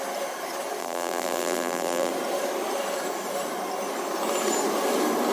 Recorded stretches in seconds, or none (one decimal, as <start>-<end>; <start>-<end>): 0.0-0.8; 2.1-5.3